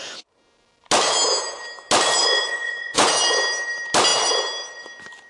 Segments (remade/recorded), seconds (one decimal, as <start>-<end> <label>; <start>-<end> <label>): 0.0-2.2 recorded; 2.2-3.1 remade; 3.1-5.3 recorded